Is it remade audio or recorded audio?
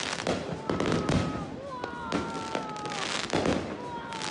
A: recorded